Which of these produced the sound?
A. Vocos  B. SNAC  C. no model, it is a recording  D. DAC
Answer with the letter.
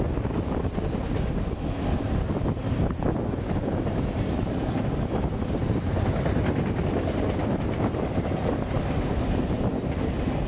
C